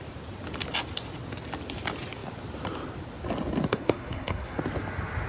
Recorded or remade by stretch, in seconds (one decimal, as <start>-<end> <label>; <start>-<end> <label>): 0.0-3.7 recorded; 3.7-4.6 remade; 4.6-5.3 recorded